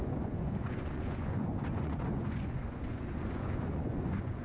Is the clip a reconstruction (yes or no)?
yes